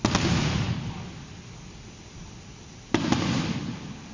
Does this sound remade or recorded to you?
recorded